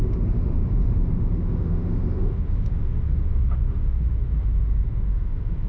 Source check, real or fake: fake